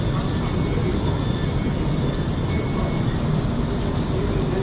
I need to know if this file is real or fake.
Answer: real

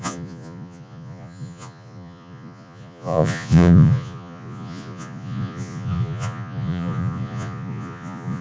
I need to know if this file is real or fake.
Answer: fake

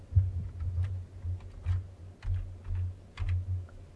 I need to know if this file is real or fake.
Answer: real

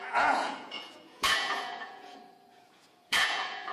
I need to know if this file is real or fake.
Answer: fake